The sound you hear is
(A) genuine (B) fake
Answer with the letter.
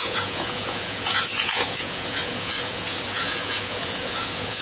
B